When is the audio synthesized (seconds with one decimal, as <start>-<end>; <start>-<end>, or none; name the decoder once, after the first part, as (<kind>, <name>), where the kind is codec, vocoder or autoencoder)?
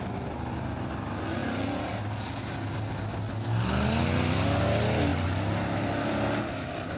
none